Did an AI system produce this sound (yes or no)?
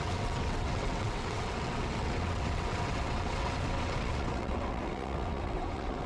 yes